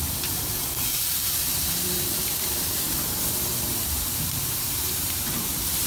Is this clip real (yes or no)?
no